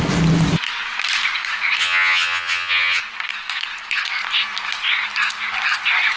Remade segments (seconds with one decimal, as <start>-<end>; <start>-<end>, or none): 1.8-3.0